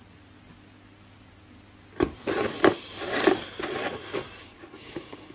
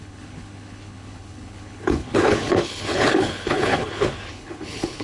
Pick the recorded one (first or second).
first